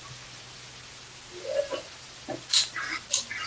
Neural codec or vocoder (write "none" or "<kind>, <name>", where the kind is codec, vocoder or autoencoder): none